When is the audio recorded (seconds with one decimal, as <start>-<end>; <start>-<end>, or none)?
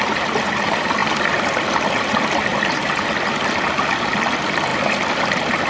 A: 0.0-2.5; 3.1-5.7